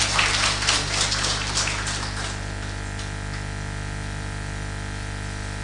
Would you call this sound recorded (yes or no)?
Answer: yes